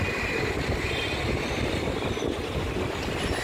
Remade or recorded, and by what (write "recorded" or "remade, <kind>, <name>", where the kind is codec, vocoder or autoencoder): recorded